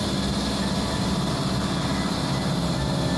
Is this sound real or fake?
real